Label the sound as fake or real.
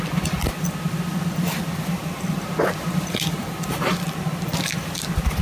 real